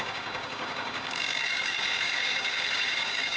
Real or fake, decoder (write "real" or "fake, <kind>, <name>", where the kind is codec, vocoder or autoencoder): fake, codec, DAC